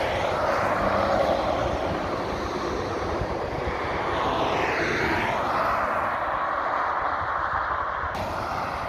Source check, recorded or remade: recorded